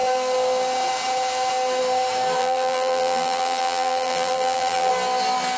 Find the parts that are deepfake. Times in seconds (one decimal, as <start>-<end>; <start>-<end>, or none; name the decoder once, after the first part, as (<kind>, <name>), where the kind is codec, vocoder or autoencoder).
2.4-4.9 (vocoder, BigVGAN v2)